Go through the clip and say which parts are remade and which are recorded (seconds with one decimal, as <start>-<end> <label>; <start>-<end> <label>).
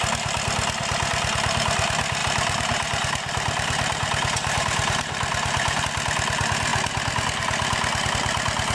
0.0-2.2 recorded; 2.2-5.8 remade; 5.8-8.7 recorded